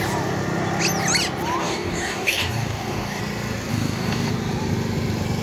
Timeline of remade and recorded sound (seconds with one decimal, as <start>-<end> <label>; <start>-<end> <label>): 0.0-1.6 recorded; 1.6-3.2 remade; 3.2-3.7 recorded; 3.7-4.3 remade; 4.3-5.4 recorded